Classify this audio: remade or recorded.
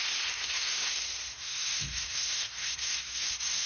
remade